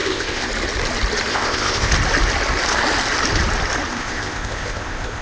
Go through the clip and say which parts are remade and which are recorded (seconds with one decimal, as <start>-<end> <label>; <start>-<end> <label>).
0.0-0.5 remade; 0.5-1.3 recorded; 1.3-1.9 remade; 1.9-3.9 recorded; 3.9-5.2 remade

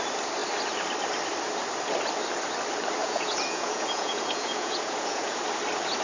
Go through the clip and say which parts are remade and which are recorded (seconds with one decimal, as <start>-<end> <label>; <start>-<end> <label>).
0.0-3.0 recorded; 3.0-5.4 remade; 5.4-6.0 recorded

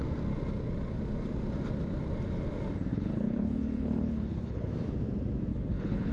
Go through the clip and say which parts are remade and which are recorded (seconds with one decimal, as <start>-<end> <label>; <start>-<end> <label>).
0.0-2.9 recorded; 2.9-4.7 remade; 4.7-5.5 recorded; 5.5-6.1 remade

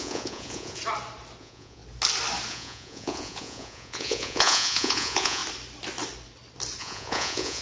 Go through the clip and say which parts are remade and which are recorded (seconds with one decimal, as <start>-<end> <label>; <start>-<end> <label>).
0.0-0.8 remade; 0.8-1.4 recorded; 1.4-1.8 remade; 1.8-2.5 recorded; 2.5-5.4 remade; 5.4-6.8 recorded; 6.8-7.6 remade

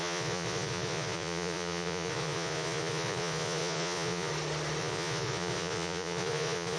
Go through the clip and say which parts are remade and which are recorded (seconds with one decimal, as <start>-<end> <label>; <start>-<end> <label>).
0.0-4.3 remade; 4.3-4.8 recorded; 4.8-6.8 remade

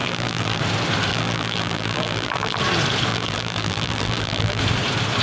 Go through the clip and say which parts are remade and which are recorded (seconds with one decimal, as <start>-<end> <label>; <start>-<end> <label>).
0.0-0.6 remade; 0.6-1.1 recorded; 1.1-2.6 remade; 2.6-3.1 recorded; 3.1-4.6 remade; 4.6-5.2 recorded

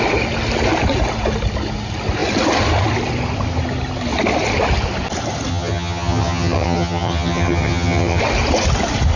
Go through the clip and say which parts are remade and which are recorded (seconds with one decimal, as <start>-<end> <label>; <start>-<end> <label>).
0.0-5.5 recorded; 5.5-8.2 remade; 8.2-9.2 recorded